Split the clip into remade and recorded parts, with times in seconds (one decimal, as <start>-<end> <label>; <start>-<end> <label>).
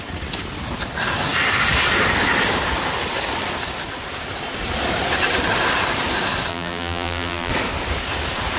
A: 0.0-6.5 recorded; 6.5-7.5 remade; 7.5-8.6 recorded